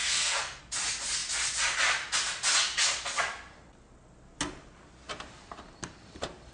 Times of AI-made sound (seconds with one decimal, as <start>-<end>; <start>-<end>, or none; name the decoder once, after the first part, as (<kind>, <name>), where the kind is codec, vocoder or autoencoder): 0.0-0.6 (codec, SNAC)